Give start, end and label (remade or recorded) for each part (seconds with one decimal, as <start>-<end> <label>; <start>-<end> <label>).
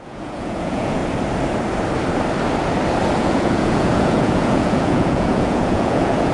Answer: 0.0-1.0 remade; 1.0-3.2 recorded; 3.2-6.3 remade